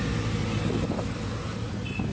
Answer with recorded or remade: recorded